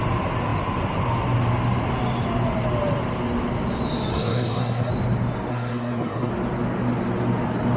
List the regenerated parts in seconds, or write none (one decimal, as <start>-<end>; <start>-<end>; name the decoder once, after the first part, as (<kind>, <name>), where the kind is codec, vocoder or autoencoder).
4.1-4.9 (codec, SNAC); 5.5-6.3